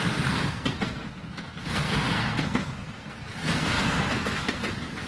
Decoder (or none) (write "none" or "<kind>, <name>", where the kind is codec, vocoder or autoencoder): codec, SNAC